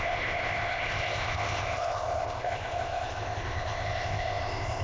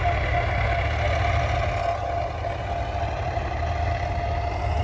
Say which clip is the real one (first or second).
second